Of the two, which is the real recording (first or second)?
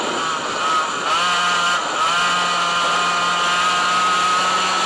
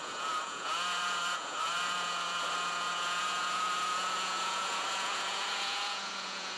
first